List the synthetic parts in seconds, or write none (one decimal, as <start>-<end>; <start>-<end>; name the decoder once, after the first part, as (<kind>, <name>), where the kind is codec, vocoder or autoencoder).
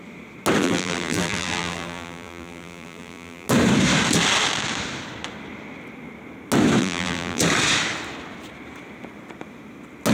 0.6-3.5 (vocoder, BigVGAN v2); 6.8-7.4